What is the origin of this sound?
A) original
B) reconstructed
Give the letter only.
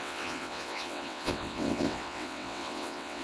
B